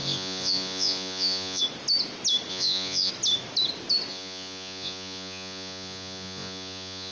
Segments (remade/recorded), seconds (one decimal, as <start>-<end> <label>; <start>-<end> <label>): 0.0-1.6 remade; 1.6-2.5 recorded; 2.5-3.1 remade; 3.1-4.1 recorded; 4.1-7.1 remade